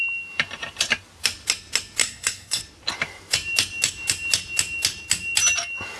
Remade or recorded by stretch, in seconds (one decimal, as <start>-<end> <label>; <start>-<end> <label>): 0.0-2.0 recorded; 2.0-2.6 remade; 2.6-6.0 recorded